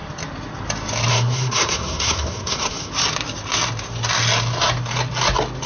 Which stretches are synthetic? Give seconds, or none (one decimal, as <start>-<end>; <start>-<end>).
1.1-2.9